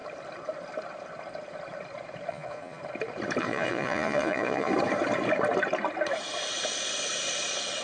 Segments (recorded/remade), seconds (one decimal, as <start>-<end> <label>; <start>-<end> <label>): 0.0-2.3 recorded; 2.3-2.8 remade; 2.8-3.4 recorded; 3.4-4.7 remade; 4.7-7.8 recorded

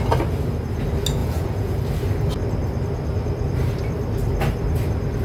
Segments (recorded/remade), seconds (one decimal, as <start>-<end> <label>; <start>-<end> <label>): 0.0-1.2 recorded; 1.2-1.8 remade; 1.8-5.2 recorded

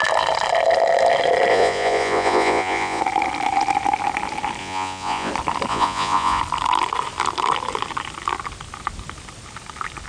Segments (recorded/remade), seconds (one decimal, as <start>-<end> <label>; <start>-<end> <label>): 0.0-1.5 recorded; 1.5-3.0 remade; 3.0-4.6 recorded; 4.6-5.3 remade; 5.3-5.7 recorded; 5.7-6.4 remade; 6.4-10.1 recorded

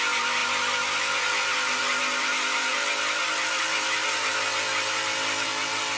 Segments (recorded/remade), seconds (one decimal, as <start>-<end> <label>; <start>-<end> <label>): 0.0-6.0 recorded